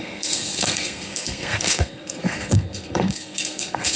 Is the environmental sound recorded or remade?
remade